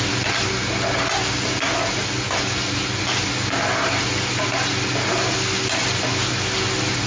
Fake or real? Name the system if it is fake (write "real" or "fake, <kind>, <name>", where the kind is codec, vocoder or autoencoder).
real